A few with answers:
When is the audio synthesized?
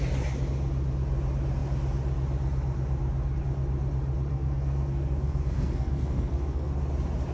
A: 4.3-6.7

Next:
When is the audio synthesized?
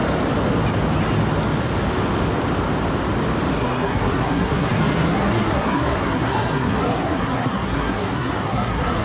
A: 3.5-9.0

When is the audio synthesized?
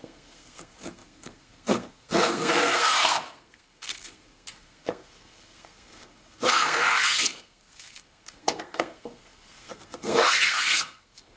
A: 0.0-11.4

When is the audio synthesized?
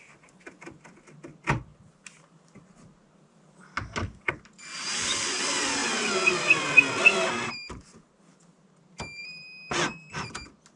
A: none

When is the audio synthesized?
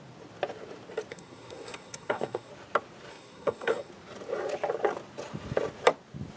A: 1.1-2.5; 3.1-3.9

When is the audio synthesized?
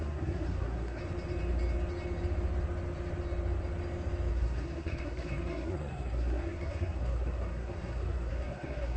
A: 0.0-1.0; 4.3-9.0